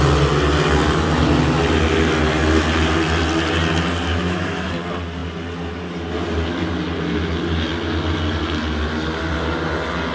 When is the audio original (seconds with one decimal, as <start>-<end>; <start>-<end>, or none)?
0.0-4.1; 4.7-10.1